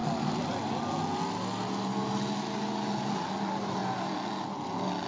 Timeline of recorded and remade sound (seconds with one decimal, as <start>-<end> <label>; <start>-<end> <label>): 0.0-5.1 recorded